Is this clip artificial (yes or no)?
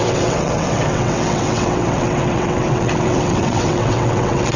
yes